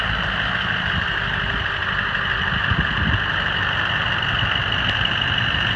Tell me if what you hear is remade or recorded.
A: recorded